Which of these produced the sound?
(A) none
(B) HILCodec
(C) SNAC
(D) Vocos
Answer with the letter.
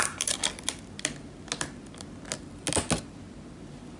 A